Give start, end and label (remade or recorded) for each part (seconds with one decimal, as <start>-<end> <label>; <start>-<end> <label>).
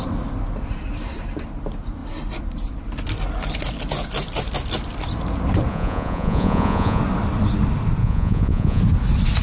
0.0-5.7 recorded; 5.7-7.0 remade; 7.0-8.0 recorded; 8.0-8.8 remade; 8.8-9.4 recorded